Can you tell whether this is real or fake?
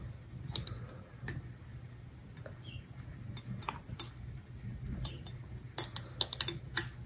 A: real